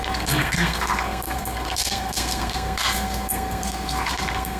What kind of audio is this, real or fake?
fake